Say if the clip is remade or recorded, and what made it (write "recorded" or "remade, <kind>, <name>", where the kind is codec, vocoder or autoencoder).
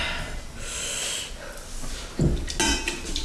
recorded